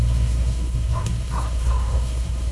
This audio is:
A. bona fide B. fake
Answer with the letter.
B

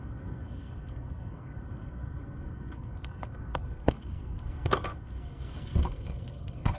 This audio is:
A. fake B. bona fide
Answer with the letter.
A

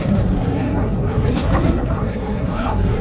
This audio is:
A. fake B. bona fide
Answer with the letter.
A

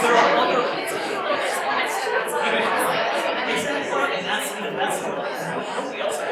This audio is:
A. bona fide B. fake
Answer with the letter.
B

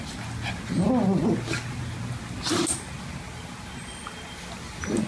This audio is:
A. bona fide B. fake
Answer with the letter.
A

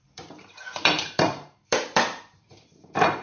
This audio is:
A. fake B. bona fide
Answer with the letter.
A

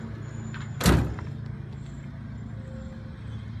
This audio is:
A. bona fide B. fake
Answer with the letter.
A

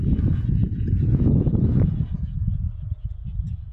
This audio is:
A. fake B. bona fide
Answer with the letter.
A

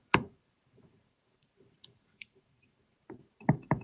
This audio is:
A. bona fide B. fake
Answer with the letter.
B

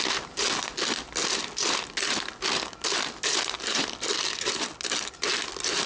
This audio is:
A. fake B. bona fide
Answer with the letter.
B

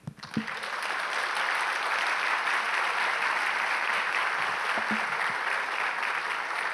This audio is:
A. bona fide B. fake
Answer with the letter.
A